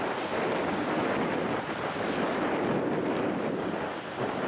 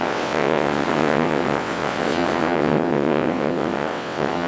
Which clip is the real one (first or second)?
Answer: first